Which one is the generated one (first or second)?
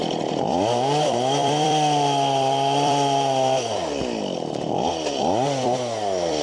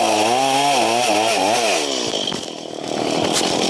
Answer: first